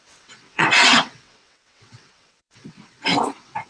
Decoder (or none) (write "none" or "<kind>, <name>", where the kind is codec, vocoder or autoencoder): vocoder, WaveNeXt